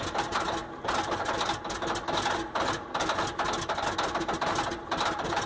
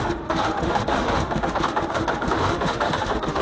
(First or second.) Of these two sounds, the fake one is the second